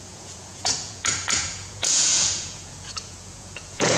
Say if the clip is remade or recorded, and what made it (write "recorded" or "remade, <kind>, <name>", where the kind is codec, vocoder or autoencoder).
remade, vocoder, Vocos